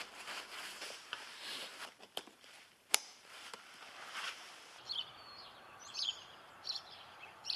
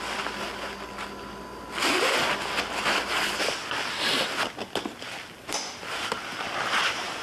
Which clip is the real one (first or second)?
second